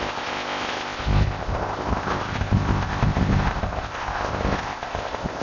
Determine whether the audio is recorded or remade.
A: remade